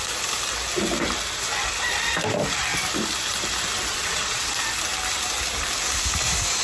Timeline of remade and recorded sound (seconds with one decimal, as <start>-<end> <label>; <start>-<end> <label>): 0.0-3.9 recorded; 3.9-4.5 remade; 4.5-6.6 recorded